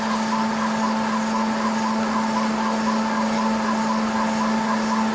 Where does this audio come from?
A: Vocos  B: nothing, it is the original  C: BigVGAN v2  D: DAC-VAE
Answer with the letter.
B